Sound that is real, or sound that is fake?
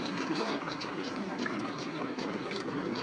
fake